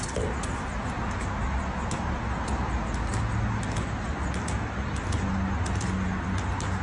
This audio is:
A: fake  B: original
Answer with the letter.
B